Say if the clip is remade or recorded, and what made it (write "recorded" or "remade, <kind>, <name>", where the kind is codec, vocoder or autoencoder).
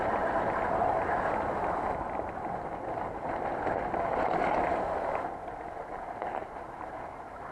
recorded